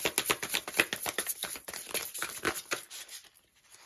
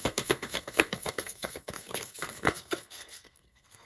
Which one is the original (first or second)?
first